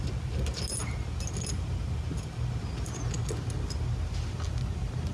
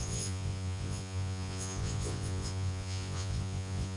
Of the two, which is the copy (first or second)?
second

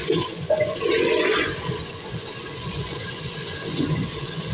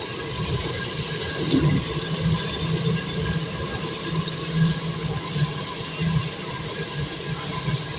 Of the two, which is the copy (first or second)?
first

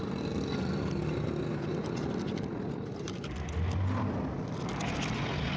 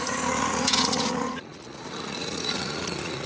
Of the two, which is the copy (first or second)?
second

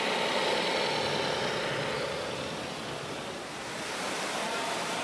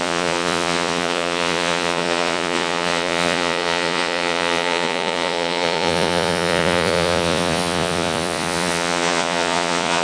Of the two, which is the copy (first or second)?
second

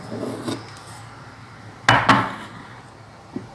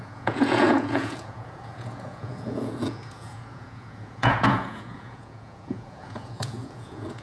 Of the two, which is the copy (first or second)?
second